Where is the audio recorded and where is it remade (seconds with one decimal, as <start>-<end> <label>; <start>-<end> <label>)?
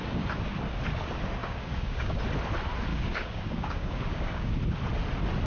0.0-1.4 recorded; 1.4-2.2 remade; 2.2-2.9 recorded; 2.9-4.5 remade; 4.5-5.5 recorded